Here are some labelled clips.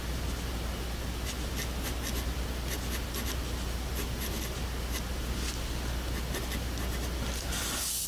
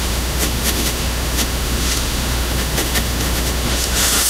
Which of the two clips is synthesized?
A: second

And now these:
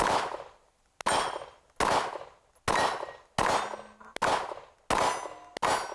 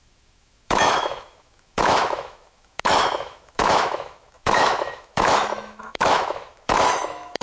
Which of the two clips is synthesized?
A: second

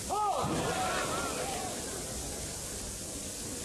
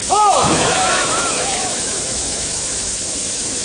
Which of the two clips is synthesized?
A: second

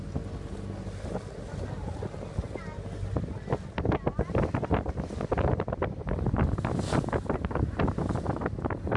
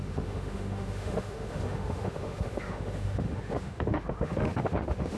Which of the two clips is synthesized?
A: second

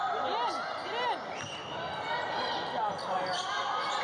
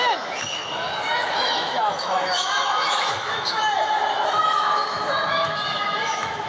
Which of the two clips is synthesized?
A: second